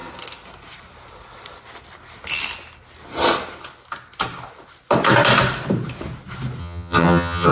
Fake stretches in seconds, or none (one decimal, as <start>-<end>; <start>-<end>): 6.6-7.5